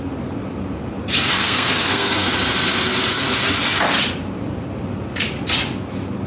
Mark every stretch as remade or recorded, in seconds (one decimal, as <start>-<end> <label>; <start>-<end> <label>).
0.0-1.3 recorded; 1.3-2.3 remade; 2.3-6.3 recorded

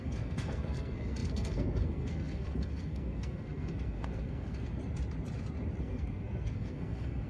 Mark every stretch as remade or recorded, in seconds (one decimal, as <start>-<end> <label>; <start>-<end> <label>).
0.0-4.8 remade; 4.8-5.8 recorded; 5.8-7.3 remade

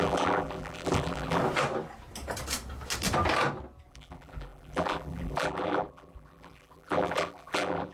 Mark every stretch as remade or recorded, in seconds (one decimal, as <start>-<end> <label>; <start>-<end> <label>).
0.0-1.4 remade; 1.4-3.9 recorded; 3.9-7.9 remade